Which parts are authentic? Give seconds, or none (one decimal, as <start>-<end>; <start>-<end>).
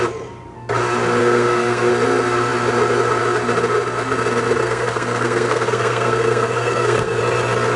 0.0-1.2; 1.9-4.6; 7.2-7.8